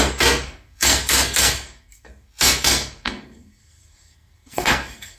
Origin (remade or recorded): remade